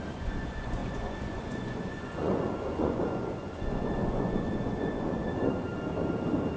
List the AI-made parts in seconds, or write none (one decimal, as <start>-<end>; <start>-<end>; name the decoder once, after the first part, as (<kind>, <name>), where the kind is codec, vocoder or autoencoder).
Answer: 0.0-5.7 (vocoder, Vocos)